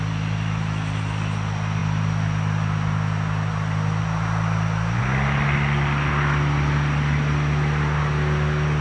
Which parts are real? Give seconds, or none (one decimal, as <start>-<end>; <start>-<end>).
0.0-8.8